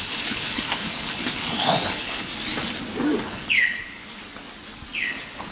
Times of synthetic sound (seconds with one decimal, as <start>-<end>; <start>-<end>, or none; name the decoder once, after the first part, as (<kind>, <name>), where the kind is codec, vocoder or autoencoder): 0.0-2.3 (codec, HILCodec); 3.2-4.2; 5.0-5.5